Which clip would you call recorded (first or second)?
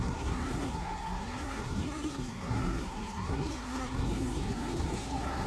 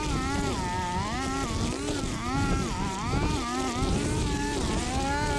second